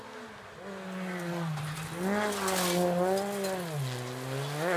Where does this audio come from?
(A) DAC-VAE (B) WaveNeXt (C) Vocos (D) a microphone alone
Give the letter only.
D